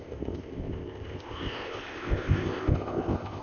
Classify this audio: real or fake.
fake